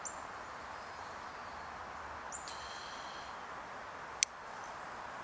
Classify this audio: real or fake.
real